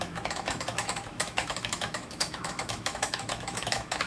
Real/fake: fake